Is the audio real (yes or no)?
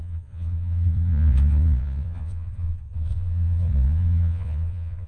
no